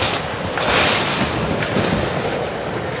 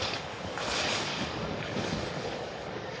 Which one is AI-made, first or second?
second